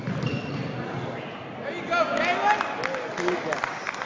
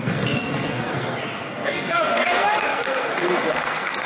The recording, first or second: first